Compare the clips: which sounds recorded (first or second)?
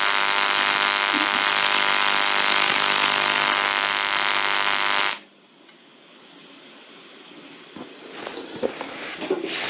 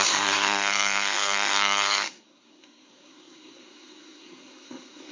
first